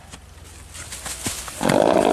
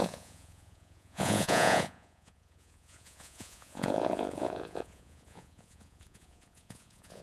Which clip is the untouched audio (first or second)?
first